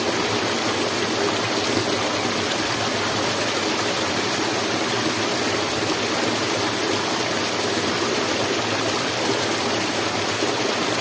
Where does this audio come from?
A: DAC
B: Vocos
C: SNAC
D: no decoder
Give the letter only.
D